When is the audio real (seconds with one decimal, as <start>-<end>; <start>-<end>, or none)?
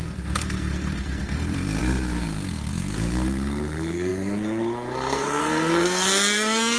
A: none